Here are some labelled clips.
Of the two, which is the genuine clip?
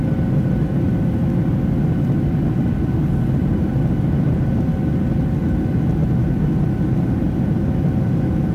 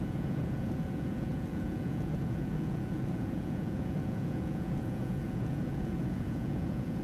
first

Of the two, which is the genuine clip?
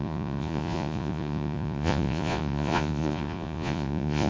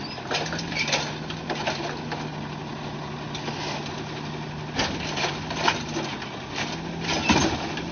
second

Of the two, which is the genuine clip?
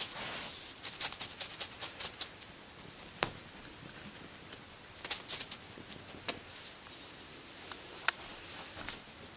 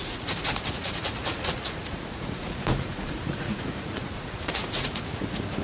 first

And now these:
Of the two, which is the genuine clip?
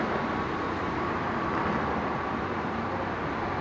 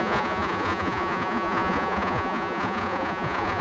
first